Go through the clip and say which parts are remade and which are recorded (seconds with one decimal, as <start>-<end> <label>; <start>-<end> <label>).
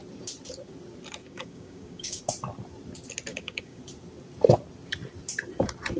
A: 0.0-1.2 recorded; 1.2-2.2 remade; 2.2-3.3 recorded; 3.3-3.8 remade; 3.8-6.0 recorded